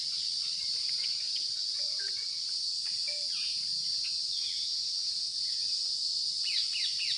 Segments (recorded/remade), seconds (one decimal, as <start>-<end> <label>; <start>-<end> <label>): 0.0-1.0 recorded; 1.0-2.3 remade; 2.3-7.2 recorded